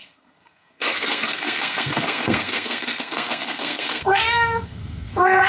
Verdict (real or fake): fake